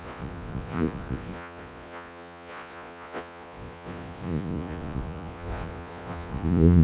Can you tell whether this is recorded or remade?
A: remade